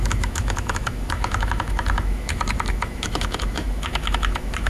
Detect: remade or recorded remade